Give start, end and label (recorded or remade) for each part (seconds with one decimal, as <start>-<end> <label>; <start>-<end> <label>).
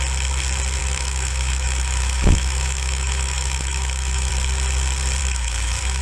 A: 0.0-0.8 recorded; 0.8-4.3 remade; 4.3-5.2 recorded; 5.2-6.0 remade